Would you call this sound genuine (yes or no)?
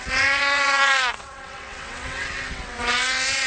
no